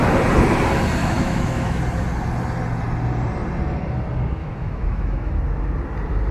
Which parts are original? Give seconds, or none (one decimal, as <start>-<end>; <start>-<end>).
0.0-1.0; 1.8-4.4; 5.3-6.3